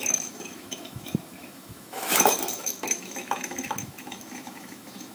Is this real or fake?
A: fake